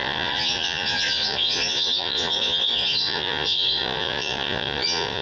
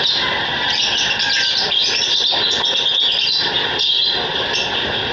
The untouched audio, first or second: second